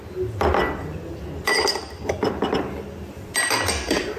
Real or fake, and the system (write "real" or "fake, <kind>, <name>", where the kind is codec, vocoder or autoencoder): real